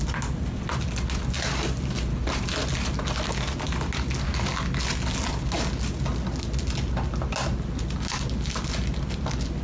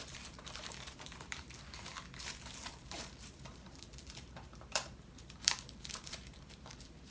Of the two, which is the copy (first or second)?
second